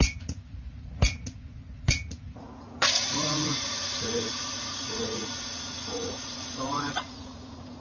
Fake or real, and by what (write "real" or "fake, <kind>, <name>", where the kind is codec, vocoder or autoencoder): fake, vocoder, Vocos